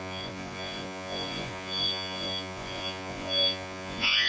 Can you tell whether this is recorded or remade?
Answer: remade